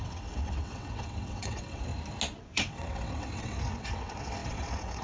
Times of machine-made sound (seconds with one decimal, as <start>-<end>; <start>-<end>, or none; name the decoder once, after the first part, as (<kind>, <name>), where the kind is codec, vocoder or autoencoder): 0.0-1.9 (vocoder, WaveNeXt); 2.4-5.0

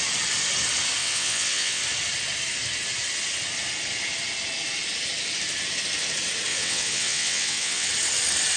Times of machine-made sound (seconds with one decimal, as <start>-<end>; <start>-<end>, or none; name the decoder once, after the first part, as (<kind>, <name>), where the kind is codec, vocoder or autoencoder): 1.0-1.8 (vocoder, WaveNeXt); 6.5-7.9

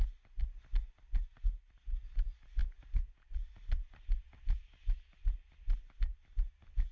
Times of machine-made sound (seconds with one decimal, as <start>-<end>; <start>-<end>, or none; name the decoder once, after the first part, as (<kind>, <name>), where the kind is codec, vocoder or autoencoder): none

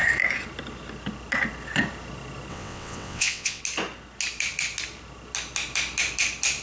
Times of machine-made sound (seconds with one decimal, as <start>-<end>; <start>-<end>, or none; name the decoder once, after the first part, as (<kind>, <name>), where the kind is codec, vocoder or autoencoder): 2.5-3.6 (vocoder, WaveNeXt)

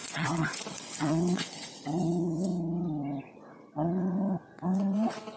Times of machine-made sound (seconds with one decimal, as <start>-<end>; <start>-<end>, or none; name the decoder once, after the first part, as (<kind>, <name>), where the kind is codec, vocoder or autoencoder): 0.0-2.5 (vocoder, WaveNeXt); 3.2-5.4

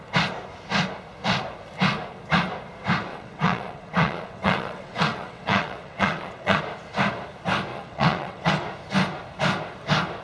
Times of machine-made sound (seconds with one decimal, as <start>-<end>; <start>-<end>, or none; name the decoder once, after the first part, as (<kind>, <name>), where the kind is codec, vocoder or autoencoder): 3.1-6.6 (vocoder, WaveNeXt); 7.7-8.5

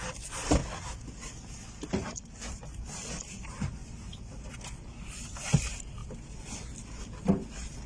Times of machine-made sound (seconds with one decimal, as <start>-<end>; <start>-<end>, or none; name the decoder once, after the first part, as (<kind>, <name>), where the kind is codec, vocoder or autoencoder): none

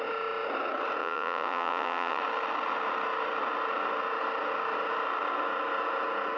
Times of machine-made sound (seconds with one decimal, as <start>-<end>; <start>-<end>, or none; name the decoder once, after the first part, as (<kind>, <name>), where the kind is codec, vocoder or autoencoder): 1.0-2.2 (vocoder, WaveNeXt)